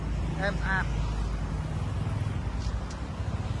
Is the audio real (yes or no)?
yes